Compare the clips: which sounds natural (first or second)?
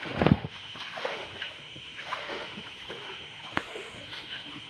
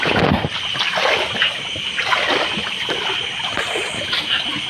second